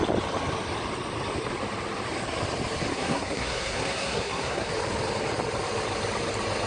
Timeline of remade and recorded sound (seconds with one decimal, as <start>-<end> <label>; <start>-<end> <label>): 0.0-2.9 recorded; 2.9-4.7 remade; 4.7-6.7 recorded